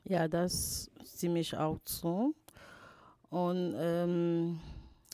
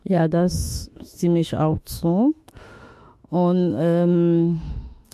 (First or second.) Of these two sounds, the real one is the first